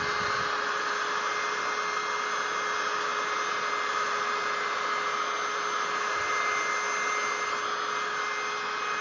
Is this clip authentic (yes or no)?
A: yes